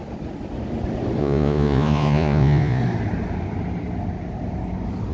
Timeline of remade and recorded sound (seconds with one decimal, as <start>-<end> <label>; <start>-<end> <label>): 0.0-1.2 recorded; 1.2-2.8 remade; 2.8-5.1 recorded